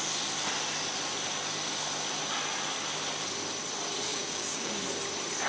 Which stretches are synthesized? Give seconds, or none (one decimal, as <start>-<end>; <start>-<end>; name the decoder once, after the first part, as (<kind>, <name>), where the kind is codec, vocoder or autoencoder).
4.1-4.7 (codec, DAC)